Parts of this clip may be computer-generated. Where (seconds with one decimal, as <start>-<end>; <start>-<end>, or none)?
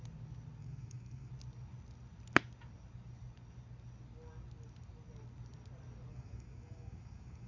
0.6-1.3; 6.1-7.5